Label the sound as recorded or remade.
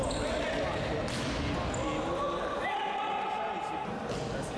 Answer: recorded